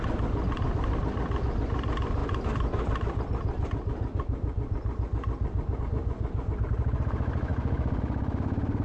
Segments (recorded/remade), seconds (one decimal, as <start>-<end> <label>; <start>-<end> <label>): 0.0-8.8 recorded